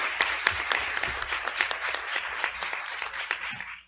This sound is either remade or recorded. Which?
remade